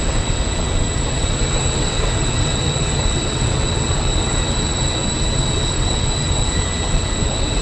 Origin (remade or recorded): remade